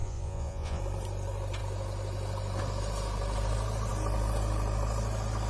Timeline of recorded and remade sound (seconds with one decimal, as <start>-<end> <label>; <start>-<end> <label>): 0.0-0.8 remade; 0.8-5.5 recorded